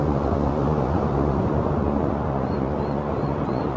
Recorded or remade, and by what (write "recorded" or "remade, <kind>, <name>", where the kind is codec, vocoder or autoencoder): remade, vocoder, Vocos